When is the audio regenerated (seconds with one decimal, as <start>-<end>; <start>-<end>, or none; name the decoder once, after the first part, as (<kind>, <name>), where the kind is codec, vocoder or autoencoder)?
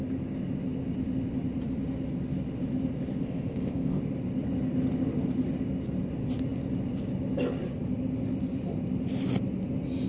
3.2-4.0 (codec, ZipCodec)